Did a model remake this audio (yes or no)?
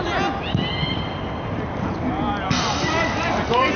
no